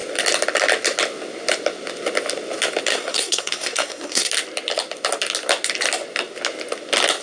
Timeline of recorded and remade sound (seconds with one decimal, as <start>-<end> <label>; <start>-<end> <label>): 0.0-2.9 recorded; 2.9-4.3 remade; 4.3-7.2 recorded